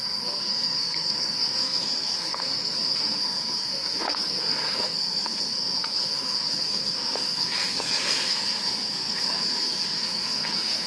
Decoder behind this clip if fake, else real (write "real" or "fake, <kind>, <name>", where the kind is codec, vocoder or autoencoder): fake, codec, SNAC